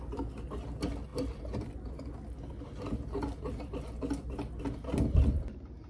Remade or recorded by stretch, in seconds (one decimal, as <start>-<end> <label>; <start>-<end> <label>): 0.0-5.9 recorded